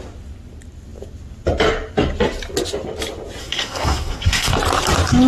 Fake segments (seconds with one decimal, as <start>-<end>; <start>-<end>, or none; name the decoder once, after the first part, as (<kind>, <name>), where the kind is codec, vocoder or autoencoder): 3.4-4.5 (codec, SNAC)